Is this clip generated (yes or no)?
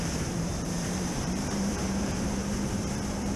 yes